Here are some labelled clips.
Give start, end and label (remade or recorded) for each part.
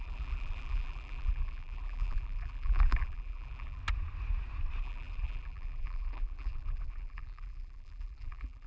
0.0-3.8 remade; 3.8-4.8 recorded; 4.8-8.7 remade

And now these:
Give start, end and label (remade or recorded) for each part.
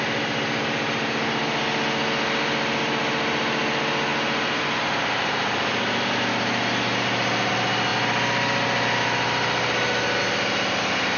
0.0-11.2 recorded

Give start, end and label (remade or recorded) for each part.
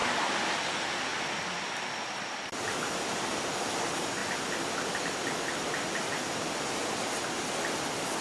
0.0-8.2 recorded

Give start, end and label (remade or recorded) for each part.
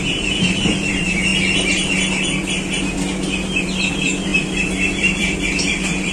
0.0-1.3 remade; 1.3-3.9 recorded; 3.9-4.3 remade; 4.3-4.9 recorded; 4.9-6.1 remade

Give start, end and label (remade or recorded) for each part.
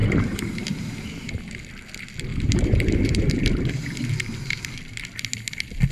0.0-1.7 remade; 1.7-2.3 recorded; 2.3-3.5 remade; 3.5-5.9 recorded